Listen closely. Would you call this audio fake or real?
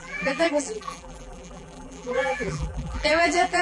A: fake